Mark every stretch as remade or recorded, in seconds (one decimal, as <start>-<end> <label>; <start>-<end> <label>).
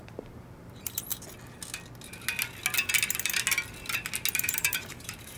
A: 0.0-1.1 remade; 1.1-4.3 recorded; 4.3-5.4 remade